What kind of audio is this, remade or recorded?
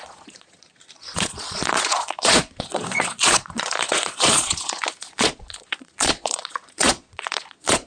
remade